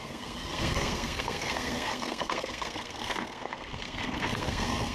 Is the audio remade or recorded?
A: remade